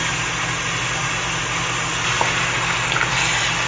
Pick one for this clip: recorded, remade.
recorded